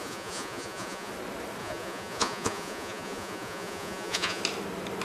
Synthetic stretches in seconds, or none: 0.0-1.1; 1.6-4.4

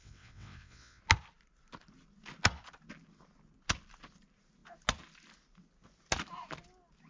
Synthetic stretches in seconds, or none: 0.0-1.0

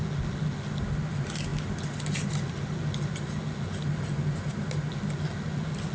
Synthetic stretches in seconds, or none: none

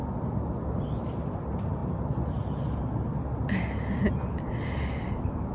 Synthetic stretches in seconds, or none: none

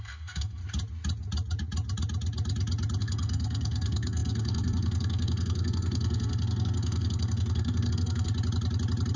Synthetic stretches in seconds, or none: 0.0-0.6; 3.0-8.3

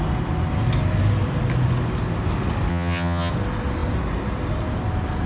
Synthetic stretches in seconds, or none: 2.7-3.3